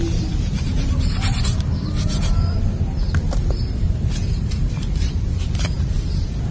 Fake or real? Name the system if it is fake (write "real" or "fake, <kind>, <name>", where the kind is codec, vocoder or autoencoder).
fake, vocoder, BigVGAN v2